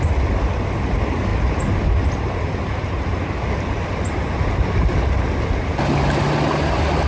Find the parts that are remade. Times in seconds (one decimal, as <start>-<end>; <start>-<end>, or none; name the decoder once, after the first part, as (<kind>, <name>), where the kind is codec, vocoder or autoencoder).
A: none